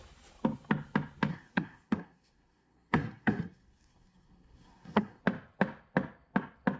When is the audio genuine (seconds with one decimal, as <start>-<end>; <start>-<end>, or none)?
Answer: 0.0-1.3; 5.2-6.8